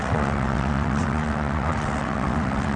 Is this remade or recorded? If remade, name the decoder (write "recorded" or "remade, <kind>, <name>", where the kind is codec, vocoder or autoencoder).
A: remade, vocoder, WaveNeXt